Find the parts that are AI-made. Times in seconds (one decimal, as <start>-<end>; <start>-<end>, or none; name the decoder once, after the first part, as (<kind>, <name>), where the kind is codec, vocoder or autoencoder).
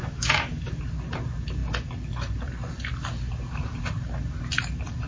0.0-0.8 (autoencoder, DAC-VAE)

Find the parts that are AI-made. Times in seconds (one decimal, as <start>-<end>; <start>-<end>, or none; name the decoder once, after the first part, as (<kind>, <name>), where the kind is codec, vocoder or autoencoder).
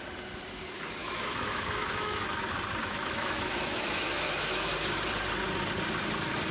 1.0-2.4 (autoencoder, DAC-VAE); 2.8-4.7